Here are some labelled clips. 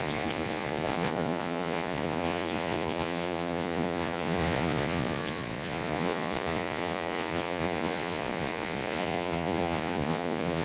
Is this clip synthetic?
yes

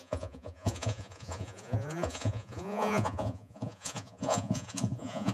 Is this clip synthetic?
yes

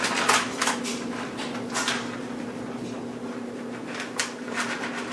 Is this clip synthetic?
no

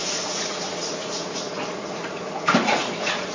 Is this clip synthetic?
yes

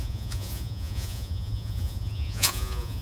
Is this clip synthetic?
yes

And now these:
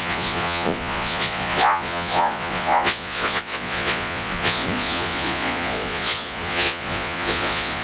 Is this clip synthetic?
yes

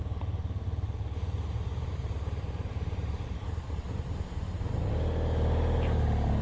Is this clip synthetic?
no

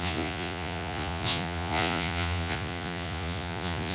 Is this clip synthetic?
yes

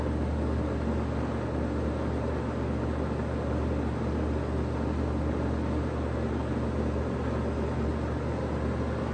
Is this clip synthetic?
no